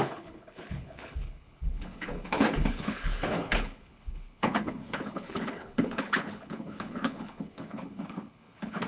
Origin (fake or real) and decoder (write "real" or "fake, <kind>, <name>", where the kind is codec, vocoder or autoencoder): fake, codec, HILCodec